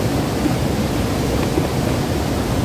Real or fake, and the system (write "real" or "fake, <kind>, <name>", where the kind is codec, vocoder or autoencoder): real